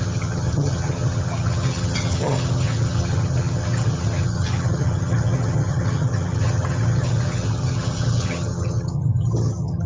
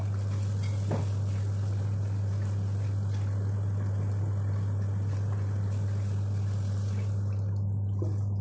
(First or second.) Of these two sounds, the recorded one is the second